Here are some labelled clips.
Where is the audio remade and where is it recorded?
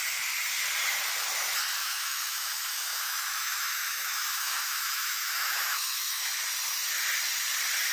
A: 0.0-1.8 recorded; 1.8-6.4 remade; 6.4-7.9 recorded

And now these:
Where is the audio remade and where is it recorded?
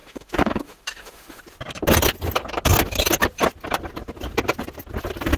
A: 0.0-1.4 remade; 1.4-5.4 recorded